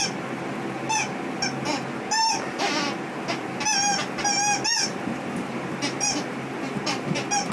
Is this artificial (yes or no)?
no